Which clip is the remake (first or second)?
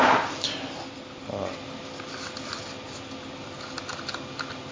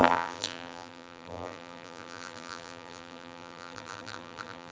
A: second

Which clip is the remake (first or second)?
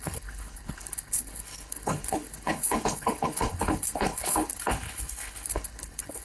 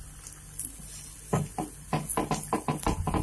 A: first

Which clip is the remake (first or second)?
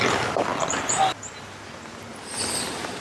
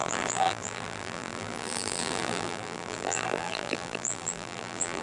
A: second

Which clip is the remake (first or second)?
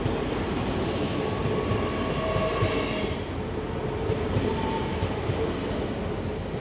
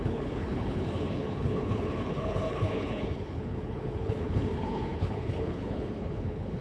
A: second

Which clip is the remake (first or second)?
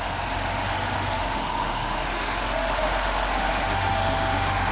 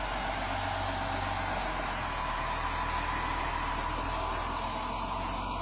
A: first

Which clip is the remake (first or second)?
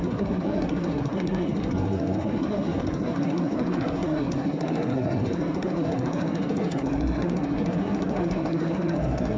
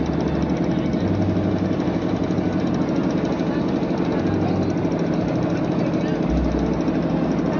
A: first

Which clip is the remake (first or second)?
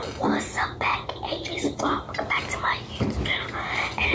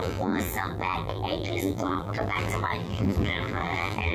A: second